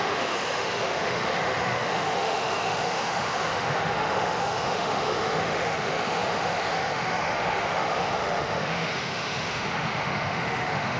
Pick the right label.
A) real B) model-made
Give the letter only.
B